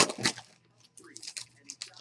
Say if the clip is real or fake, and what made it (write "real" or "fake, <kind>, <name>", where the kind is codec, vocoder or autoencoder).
real